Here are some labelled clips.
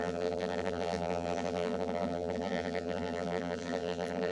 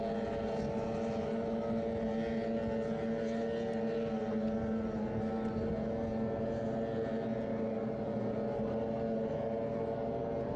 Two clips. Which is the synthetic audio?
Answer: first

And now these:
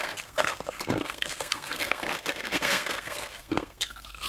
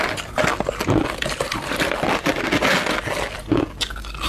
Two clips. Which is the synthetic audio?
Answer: first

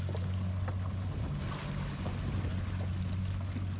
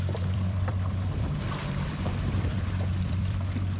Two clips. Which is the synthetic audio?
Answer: second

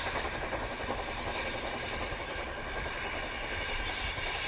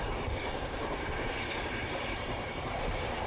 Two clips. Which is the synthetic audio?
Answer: second